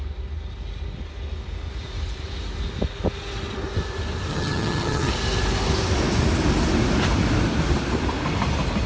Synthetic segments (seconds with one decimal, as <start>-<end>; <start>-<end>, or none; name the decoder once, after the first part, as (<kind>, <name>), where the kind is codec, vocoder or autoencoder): 4.3-5.1 (vocoder, HiFi-GAN)